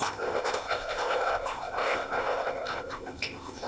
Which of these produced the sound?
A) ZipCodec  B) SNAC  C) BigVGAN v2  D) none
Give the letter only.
A